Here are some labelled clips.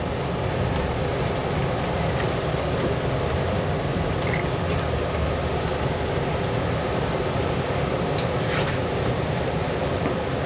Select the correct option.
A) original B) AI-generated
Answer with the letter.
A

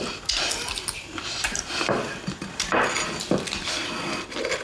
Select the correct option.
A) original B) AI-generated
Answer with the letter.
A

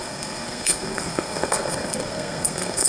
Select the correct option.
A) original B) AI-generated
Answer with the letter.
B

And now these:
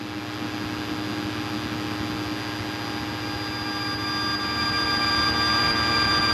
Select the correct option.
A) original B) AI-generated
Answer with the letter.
A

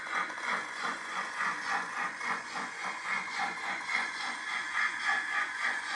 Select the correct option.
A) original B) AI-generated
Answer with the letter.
B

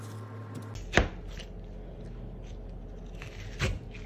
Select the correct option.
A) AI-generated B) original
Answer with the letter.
B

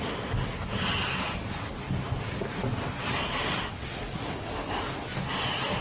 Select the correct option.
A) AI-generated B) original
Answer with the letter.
B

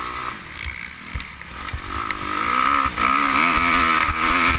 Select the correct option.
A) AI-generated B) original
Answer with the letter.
B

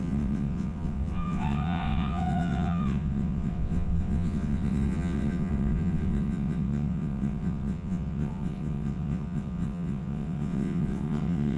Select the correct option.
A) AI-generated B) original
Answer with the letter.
A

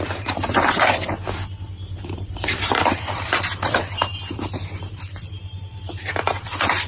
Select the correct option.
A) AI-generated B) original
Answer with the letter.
A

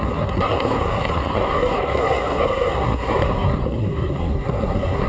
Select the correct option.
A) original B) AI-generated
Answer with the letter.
B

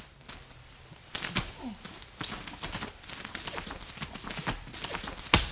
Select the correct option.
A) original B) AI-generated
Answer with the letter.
A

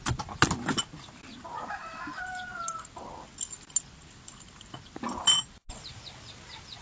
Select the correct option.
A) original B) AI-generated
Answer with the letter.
A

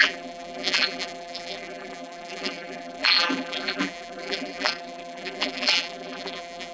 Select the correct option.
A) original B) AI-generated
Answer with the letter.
B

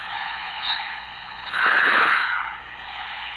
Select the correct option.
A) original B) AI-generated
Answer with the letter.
B